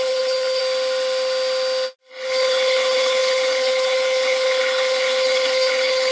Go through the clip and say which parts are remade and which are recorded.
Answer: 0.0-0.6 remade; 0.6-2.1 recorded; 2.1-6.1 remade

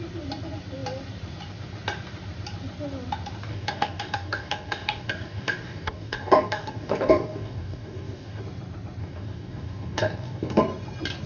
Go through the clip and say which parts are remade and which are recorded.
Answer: 0.0-3.5 recorded; 3.5-8.4 remade; 8.4-9.0 recorded; 9.0-10.6 remade; 10.6-11.3 recorded